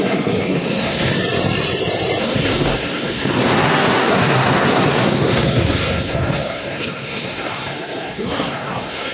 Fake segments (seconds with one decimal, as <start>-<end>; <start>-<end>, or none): 0.0-1.1; 2.2-9.1